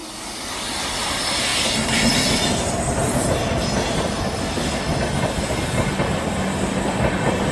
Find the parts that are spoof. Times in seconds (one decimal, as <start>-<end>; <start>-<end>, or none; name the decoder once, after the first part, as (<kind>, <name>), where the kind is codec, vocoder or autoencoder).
none